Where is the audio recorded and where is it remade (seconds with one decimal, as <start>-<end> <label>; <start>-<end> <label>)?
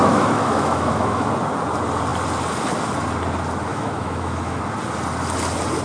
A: 0.0-1.3 remade; 1.3-3.7 recorded; 3.7-4.6 remade; 4.6-5.8 recorded